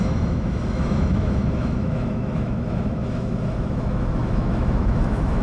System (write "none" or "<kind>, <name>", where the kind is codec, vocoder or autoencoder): autoencoder, DAC-VAE